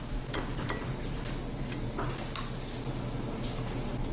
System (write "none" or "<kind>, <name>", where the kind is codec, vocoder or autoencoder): none